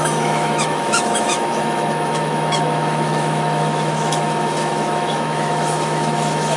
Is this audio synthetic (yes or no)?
yes